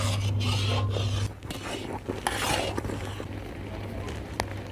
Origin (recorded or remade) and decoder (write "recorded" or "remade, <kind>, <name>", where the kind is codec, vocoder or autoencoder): recorded